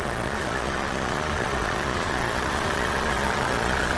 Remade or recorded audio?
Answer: remade